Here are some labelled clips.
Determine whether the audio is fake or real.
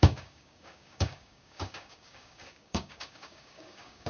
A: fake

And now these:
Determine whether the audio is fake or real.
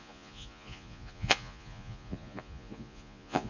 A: fake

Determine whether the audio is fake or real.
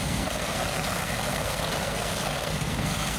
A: fake